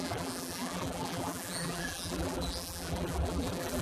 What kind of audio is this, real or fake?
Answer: fake